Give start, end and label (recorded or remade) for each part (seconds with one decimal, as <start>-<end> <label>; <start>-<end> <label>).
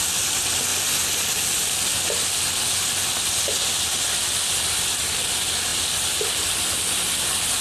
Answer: 0.0-7.6 recorded